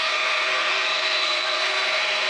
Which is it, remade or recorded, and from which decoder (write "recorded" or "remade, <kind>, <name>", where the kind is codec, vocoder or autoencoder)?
remade, codec, SNAC